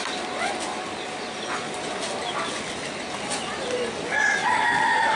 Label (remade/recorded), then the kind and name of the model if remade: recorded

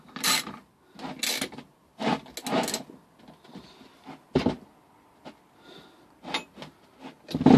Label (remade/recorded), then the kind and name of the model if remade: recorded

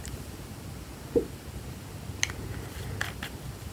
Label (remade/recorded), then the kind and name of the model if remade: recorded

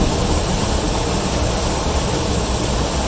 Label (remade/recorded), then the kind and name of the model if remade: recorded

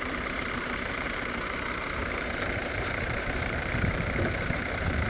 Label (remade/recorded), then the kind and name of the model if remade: remade, vocoder, BigVGAN v2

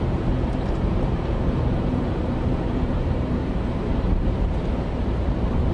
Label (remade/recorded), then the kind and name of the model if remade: remade, vocoder, BigVGAN v2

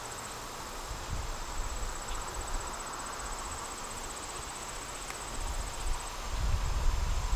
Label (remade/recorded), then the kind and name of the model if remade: recorded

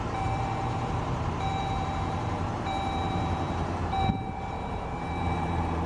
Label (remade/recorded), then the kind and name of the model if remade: remade, vocoder, BigVGAN v2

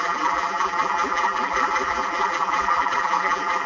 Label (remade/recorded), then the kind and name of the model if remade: remade, vocoder, BigVGAN v2